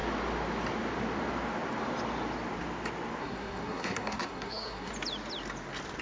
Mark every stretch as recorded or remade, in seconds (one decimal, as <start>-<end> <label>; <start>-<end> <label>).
0.0-3.2 recorded; 3.2-4.9 remade; 4.9-6.0 recorded